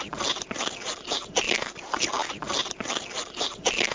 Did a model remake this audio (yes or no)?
no